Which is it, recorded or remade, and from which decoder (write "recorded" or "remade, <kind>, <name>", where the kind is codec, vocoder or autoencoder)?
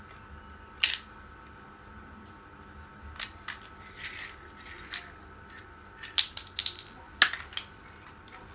recorded